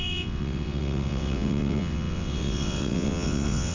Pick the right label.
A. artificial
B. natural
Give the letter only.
A